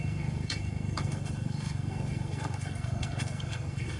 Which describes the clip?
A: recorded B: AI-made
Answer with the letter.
B